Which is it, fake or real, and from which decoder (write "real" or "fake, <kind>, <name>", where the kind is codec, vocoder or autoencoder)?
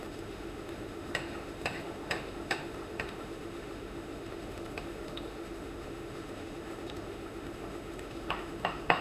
fake, autoencoder, DAC-VAE